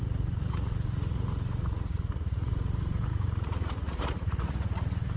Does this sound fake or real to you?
fake